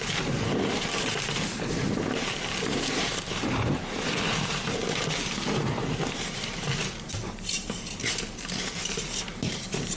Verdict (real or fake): fake